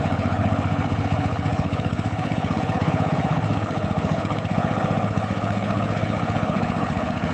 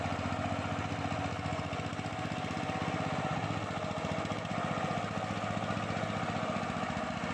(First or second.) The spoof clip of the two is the first